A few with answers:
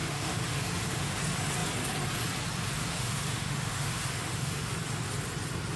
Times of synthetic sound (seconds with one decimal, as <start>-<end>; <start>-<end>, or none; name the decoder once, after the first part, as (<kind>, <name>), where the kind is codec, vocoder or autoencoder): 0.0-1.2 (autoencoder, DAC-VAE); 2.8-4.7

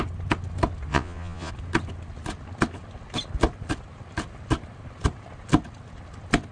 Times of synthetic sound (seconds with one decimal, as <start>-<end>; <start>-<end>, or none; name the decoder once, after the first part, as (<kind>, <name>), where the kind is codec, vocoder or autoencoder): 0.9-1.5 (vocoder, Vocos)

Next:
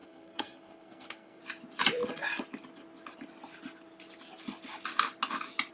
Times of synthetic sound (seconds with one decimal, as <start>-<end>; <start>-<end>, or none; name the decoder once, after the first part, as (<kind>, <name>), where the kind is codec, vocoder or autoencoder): 0.0-1.4 (codec, SNAC)

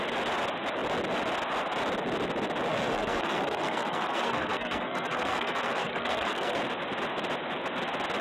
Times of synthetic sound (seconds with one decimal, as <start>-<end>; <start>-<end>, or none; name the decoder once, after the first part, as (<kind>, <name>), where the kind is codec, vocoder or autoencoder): 2.7-6.6 (codec, SNAC)